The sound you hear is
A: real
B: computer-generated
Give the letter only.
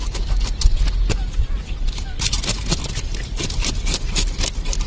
A